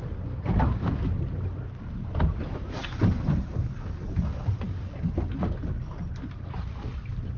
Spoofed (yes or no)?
no